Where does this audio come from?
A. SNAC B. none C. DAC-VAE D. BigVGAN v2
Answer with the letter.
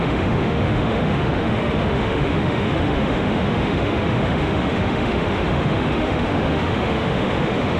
C